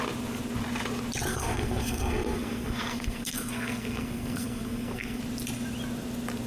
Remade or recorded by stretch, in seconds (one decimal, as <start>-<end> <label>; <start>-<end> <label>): 0.0-1.3 recorded; 1.3-5.2 remade; 5.2-6.5 recorded